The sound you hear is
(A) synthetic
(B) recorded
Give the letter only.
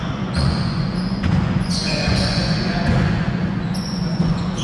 A